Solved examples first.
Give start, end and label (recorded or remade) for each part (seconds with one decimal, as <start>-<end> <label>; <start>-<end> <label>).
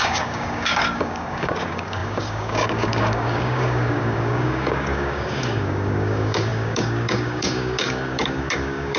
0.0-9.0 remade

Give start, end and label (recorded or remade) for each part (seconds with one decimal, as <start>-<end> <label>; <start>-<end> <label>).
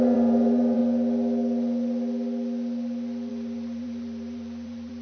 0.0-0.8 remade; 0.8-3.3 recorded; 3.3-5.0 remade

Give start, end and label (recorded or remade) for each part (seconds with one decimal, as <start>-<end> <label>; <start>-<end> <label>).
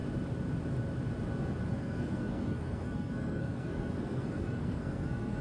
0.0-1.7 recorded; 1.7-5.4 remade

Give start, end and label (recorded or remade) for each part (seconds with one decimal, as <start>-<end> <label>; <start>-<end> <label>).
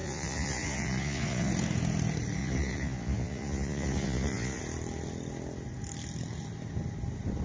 0.0-1.5 remade; 1.5-2.4 recorded; 2.4-4.6 remade; 4.6-7.4 recorded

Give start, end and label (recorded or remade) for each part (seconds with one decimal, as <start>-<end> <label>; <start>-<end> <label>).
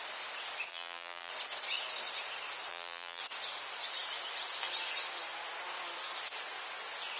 0.0-0.7 recorded; 0.7-1.3 remade; 1.3-2.7 recorded; 2.7-3.2 remade; 3.2-7.2 recorded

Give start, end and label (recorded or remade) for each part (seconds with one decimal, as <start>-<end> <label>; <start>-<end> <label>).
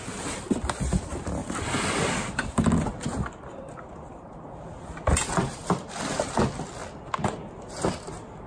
0.0-8.5 recorded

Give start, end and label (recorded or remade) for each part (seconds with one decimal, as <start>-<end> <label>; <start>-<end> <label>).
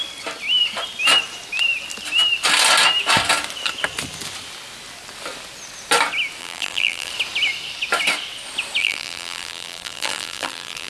0.0-6.4 recorded; 6.4-7.1 remade; 7.1-8.8 recorded; 8.8-10.9 remade